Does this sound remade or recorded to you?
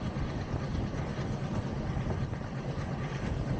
recorded